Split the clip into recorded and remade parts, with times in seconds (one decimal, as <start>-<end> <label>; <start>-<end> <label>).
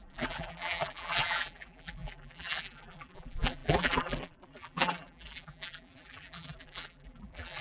0.0-7.6 remade